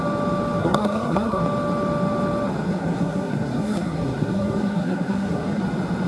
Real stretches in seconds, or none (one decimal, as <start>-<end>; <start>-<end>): 0.0-0.6; 1.4-2.7; 5.6-6.1